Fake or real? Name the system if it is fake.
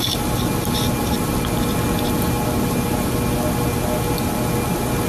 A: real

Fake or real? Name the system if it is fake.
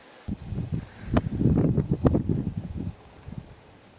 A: real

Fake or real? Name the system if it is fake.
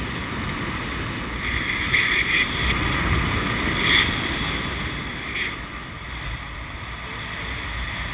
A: real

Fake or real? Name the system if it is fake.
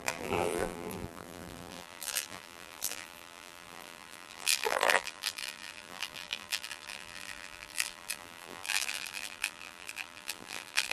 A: fake, vocoder, BigVGAN v2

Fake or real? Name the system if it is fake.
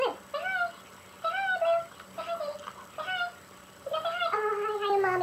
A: real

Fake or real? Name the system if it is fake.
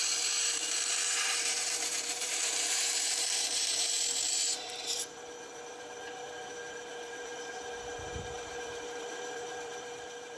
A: fake, vocoder, BigVGAN v2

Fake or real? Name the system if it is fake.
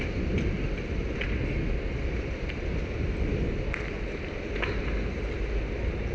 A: real